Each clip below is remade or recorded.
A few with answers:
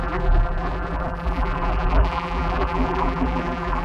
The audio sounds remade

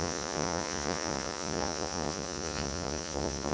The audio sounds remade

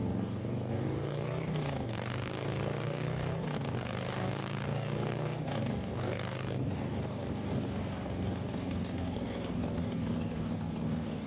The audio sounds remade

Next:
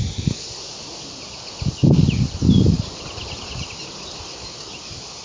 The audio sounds recorded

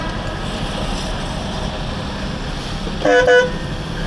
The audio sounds recorded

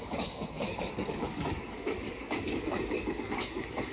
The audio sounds remade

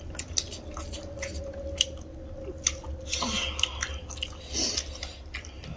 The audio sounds recorded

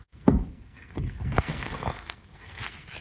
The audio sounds remade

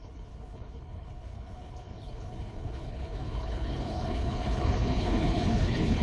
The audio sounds remade